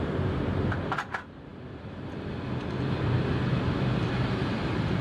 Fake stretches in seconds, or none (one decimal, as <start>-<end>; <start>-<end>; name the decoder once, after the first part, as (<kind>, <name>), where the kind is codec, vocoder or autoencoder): 0.0-5.0 (vocoder, BigVGAN v2)